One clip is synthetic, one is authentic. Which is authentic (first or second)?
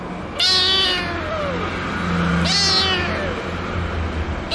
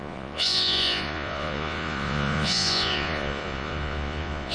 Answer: first